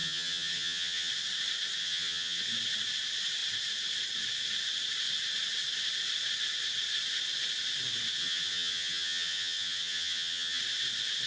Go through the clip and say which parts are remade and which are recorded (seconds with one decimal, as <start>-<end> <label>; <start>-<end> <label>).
0.0-1.1 remade; 1.1-1.8 recorded; 1.8-2.4 remade; 2.4-8.2 recorded; 8.2-10.6 remade; 10.6-11.3 recorded